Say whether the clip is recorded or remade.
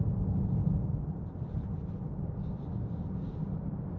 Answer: recorded